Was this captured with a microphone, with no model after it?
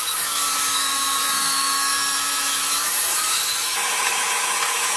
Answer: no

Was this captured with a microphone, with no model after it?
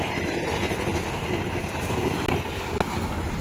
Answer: yes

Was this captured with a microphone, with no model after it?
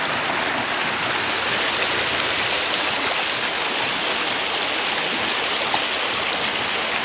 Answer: yes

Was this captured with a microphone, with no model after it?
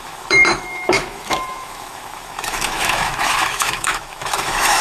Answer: no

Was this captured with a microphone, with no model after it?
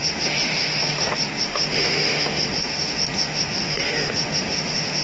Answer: no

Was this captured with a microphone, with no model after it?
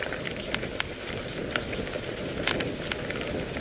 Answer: yes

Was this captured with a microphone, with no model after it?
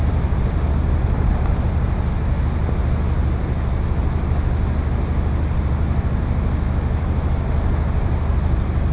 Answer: yes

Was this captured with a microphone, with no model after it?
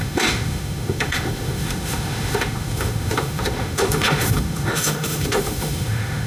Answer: no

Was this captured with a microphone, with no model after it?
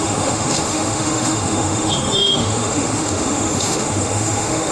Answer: no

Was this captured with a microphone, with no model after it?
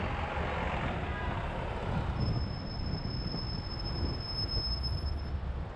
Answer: yes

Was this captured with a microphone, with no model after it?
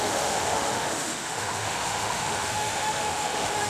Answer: no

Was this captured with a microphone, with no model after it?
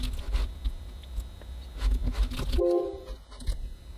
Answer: yes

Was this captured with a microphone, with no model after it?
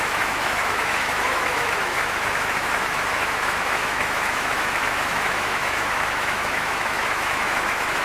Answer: no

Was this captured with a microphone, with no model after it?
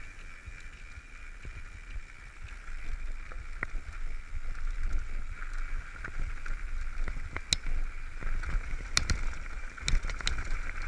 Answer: yes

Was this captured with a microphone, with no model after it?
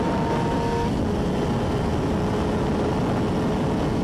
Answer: yes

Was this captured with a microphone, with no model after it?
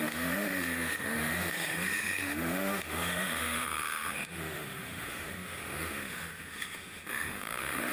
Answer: no